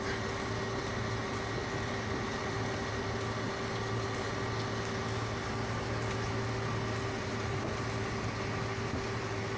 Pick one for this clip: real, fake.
real